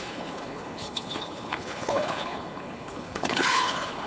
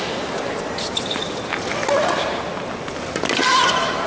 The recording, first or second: second